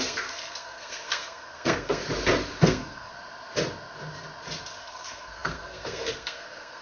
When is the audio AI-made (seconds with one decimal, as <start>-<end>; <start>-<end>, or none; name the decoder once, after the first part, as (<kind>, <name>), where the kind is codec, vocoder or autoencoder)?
0.0-2.0 (codec, SNAC); 2.6-3.1; 4.8-6.8